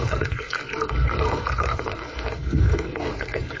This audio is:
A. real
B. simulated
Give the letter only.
B